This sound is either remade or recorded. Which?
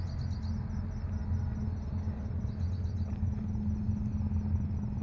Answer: recorded